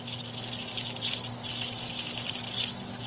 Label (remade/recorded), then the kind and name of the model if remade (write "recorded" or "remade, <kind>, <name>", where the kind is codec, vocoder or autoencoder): recorded